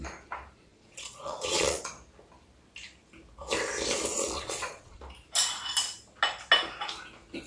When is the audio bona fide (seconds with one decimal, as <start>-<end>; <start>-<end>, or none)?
0.0-0.7; 1.9-4.1; 5.0-7.5